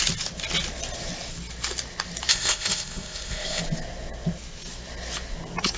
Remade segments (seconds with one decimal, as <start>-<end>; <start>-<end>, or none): 2.3-3.6